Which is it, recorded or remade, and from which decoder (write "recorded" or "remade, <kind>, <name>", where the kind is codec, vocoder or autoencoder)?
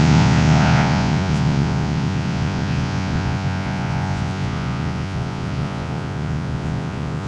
remade, vocoder, Vocos